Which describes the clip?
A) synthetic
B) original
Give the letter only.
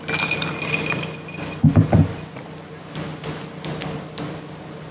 B